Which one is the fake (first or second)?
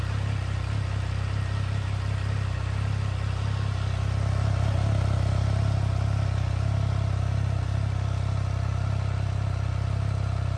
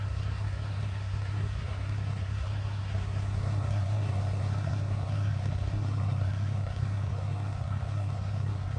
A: second